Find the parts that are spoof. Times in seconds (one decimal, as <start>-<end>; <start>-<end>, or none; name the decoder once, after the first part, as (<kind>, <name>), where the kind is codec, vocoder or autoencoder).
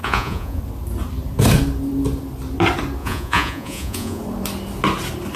0.0-0.6 (vocoder, Vocos); 3.0-4.2